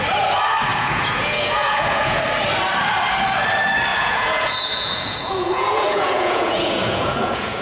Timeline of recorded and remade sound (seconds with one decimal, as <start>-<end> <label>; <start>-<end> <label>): 0.0-0.7 recorded; 0.7-2.2 remade; 2.2-3.9 recorded; 3.9-7.6 remade